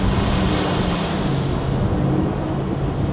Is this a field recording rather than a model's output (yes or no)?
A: yes